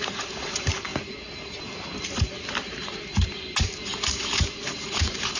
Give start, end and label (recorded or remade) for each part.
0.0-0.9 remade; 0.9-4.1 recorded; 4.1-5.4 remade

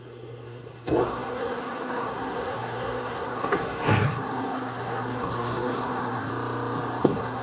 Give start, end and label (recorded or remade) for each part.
0.0-6.3 remade; 6.3-7.0 recorded; 7.0-7.4 remade

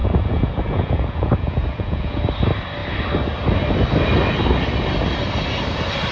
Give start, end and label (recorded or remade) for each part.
0.0-2.2 remade; 2.2-6.1 recorded